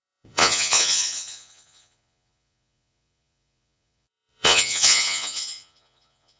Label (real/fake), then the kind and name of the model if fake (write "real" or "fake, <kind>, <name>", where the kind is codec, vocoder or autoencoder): fake, vocoder, Vocos